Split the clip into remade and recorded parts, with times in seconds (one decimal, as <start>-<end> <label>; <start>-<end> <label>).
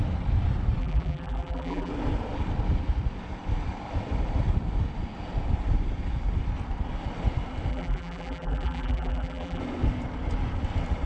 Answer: 0.0-0.8 recorded; 0.8-1.9 remade; 1.9-7.7 recorded; 7.7-9.6 remade; 9.6-11.1 recorded